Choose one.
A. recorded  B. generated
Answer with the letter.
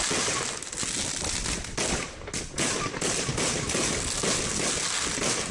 A